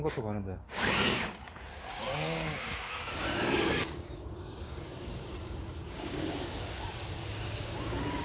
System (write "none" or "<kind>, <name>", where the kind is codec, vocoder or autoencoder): codec, DAC